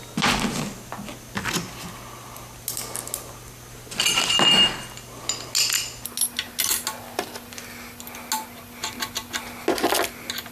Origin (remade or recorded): recorded